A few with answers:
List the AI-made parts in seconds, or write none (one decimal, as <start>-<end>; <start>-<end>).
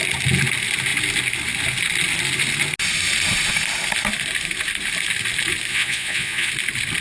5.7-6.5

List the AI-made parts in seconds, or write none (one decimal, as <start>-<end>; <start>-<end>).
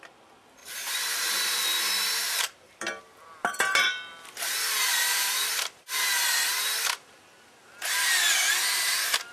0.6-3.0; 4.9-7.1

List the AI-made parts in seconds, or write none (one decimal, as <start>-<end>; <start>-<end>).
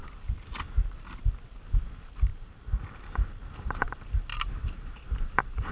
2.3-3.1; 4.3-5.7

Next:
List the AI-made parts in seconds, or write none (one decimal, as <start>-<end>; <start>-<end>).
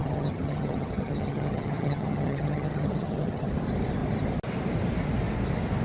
0.0-3.5